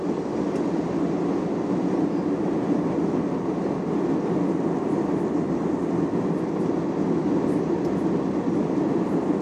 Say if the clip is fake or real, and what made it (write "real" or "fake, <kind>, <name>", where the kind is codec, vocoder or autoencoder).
real